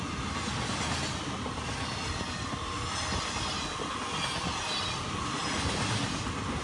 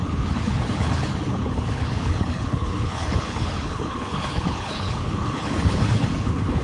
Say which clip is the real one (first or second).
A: first